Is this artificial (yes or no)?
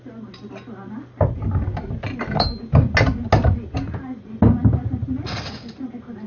no